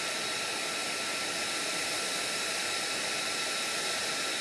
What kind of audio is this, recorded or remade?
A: recorded